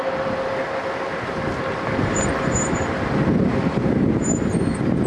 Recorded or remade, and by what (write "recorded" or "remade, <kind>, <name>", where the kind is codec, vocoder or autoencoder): recorded